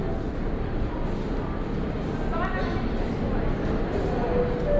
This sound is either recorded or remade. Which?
recorded